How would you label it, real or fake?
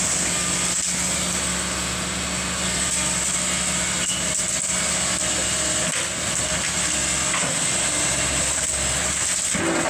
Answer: real